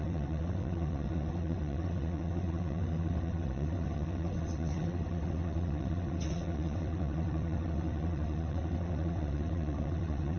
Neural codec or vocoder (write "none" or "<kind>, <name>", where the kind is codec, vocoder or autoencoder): vocoder, WaveNeXt